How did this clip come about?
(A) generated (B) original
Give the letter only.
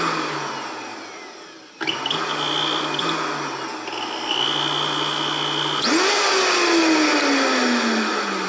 B